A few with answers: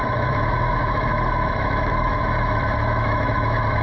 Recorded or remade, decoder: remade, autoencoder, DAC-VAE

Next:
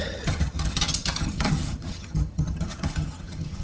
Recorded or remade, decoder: remade, vocoder, HiFi-GAN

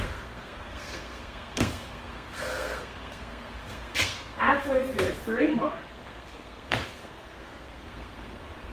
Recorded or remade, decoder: remade, codec, SNAC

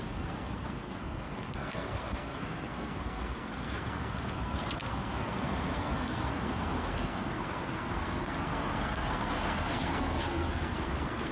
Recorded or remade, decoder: remade, codec, SNAC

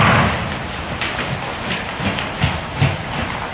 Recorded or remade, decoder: recorded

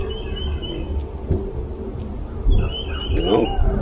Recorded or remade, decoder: recorded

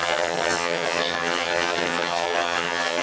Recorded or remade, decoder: remade, vocoder, HiFi-GAN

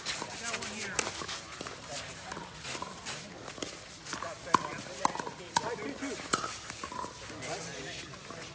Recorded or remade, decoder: recorded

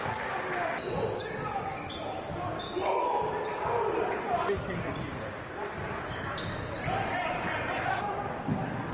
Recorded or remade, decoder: remade, vocoder, BigVGAN v2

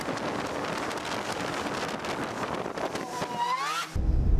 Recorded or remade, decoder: recorded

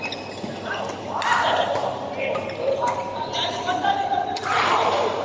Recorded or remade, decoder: recorded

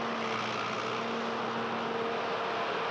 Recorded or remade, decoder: recorded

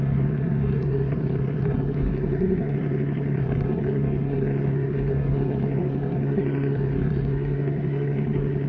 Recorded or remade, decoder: remade, codec, SNAC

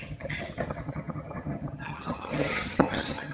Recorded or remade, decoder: remade, vocoder, HiFi-GAN